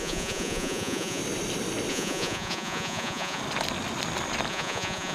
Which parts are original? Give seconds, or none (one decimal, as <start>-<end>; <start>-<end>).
1.2-1.9; 3.4-4.5